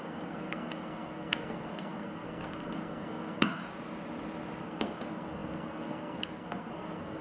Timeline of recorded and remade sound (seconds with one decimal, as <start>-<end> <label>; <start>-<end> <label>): 0.0-3.6 remade; 3.6-4.6 recorded; 4.6-7.2 remade